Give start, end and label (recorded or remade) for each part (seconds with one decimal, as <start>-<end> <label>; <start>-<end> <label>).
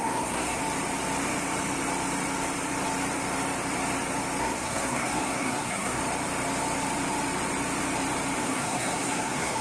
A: 0.0-0.6 remade; 0.6-4.4 recorded; 4.4-6.0 remade; 6.0-8.4 recorded; 8.4-9.6 remade